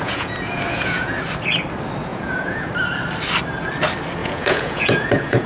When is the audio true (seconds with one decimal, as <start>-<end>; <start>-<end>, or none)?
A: 1.2-2.1; 2.7-4.2